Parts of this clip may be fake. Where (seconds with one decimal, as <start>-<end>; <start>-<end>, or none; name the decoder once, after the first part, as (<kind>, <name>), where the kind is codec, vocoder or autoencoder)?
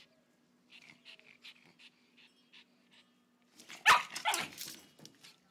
none